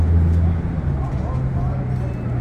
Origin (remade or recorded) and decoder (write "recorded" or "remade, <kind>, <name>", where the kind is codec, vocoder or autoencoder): recorded